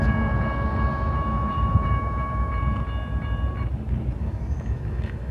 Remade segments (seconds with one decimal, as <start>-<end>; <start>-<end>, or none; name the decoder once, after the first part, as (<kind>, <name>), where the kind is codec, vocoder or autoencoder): 0.9-2.5 (autoencoder, DAC-VAE); 4.2-5.3